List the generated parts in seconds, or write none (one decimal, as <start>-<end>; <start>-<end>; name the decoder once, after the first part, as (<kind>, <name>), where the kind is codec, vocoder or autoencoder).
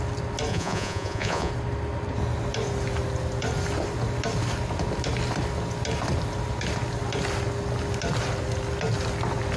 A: 0.5-1.5 (vocoder, Vocos)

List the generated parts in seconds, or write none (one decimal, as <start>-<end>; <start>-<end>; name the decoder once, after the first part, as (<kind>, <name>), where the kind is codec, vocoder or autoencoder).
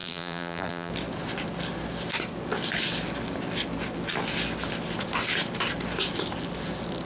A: 0.0-0.9 (vocoder, BigVGAN v2)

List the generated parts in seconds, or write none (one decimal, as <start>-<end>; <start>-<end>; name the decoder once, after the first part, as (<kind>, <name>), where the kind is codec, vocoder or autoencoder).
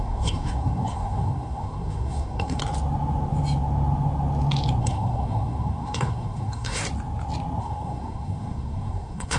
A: 0.0-2.6 (codec, SNAC); 4.8-6.8; 7.6-9.4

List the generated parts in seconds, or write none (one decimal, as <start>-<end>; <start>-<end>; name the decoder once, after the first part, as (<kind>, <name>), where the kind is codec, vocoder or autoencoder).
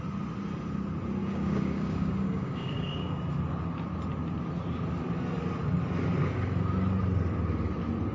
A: 1.2-3.2 (codec, DAC)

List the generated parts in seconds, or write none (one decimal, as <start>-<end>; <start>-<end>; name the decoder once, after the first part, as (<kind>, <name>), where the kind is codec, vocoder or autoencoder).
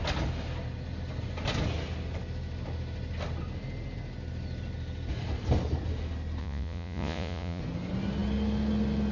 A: 6.4-7.6 (vocoder, Vocos)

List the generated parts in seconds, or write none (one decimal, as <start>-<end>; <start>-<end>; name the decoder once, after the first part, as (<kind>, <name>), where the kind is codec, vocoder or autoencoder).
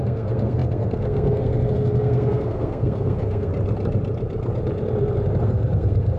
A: 0.0-3.5 (codec, SNAC); 5.4-6.2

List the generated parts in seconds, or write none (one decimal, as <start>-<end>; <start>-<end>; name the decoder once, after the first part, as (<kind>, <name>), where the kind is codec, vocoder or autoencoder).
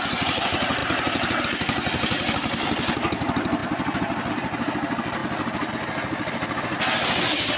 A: none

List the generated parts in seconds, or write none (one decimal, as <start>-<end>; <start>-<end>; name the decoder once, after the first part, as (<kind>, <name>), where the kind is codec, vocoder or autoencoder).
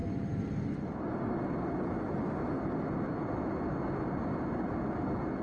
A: 0.0-3.2 (vocoder, BigVGAN v2)